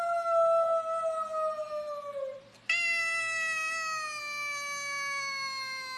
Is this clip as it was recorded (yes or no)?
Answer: yes